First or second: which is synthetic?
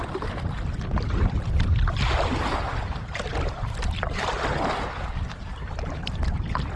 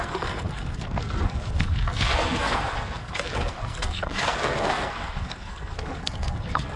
second